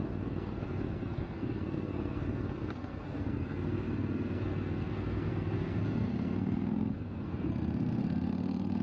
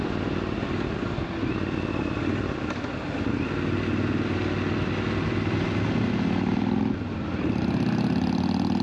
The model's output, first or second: first